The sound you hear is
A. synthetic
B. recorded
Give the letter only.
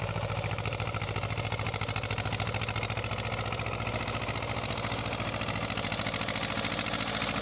B